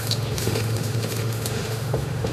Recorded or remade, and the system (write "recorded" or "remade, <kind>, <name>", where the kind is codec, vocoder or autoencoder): remade, autoencoder, DAC-VAE